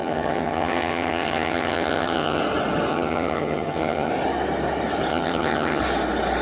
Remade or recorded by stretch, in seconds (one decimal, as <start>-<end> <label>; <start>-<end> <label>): 0.0-2.4 remade; 2.4-2.9 recorded; 2.9-4.1 remade; 4.1-5.1 recorded; 5.1-5.8 remade; 5.8-6.4 recorded